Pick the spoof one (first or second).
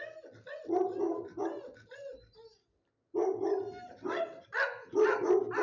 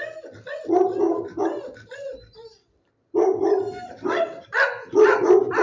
second